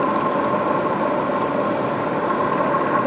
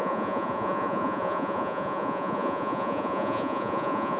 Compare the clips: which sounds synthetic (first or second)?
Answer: second